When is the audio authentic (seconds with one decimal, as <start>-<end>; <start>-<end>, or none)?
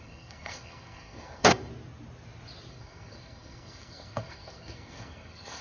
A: 1.7-2.7